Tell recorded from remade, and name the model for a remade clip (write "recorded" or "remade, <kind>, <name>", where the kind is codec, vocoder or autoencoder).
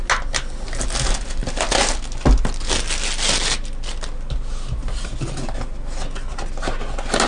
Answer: recorded